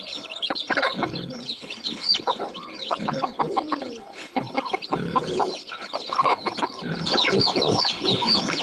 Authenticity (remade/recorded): remade